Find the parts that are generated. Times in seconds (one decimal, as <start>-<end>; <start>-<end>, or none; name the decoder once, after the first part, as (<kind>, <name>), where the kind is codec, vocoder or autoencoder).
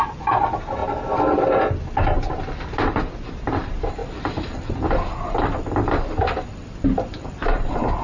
0.0-0.8 (vocoder, BigVGAN v2); 3.3-8.0